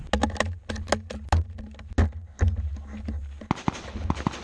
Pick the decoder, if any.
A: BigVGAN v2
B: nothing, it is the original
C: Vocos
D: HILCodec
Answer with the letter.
B